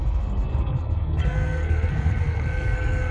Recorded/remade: remade